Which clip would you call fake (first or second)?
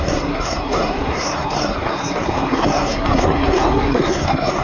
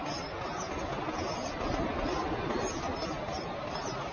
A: first